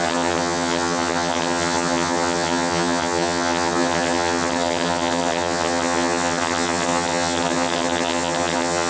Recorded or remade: remade